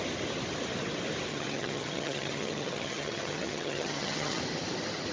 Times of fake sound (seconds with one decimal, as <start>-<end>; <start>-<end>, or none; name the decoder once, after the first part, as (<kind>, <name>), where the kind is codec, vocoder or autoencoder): 1.3-4.4 (vocoder, HiFi-GAN)